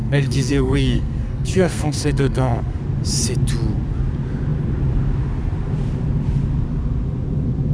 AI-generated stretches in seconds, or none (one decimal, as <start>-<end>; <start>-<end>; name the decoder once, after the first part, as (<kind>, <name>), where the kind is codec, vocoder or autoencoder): 0.0-2.8 (codec, SNAC)